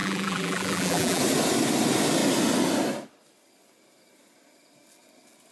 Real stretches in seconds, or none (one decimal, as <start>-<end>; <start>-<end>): 1.2-5.5